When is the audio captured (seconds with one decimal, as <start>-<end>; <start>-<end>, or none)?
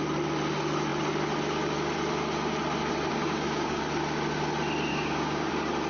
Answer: 0.0-3.1; 3.8-4.9; 5.5-5.9